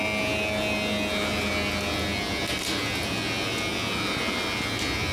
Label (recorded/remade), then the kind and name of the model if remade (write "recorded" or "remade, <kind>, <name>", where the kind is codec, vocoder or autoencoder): recorded